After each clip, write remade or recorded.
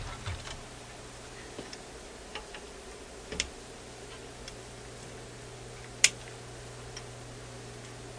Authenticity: recorded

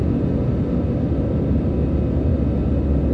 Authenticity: recorded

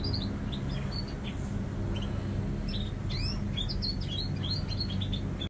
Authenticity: recorded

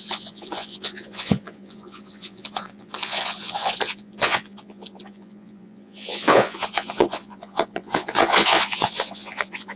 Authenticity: remade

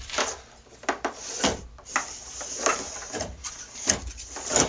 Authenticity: recorded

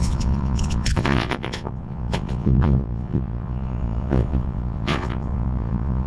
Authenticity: remade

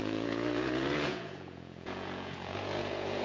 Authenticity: remade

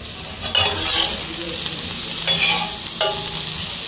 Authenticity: recorded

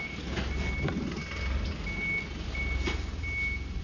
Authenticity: recorded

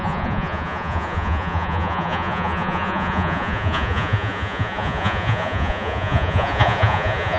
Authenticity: remade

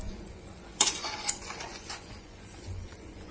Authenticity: remade